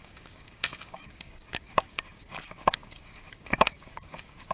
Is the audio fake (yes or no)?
yes